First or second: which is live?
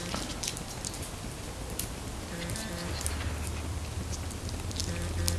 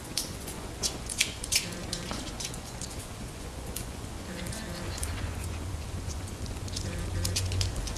first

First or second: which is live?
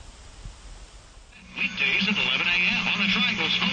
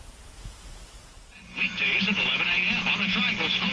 first